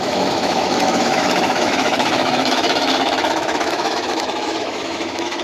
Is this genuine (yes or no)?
no